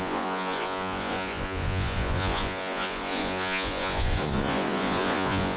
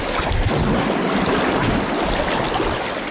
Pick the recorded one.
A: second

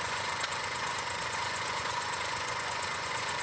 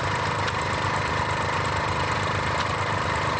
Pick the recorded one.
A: second